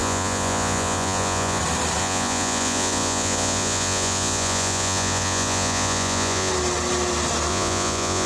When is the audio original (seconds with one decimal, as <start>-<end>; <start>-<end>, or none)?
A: 1.6-2.0; 6.5-7.5